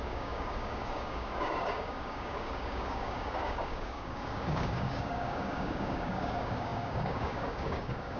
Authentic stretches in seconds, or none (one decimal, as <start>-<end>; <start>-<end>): none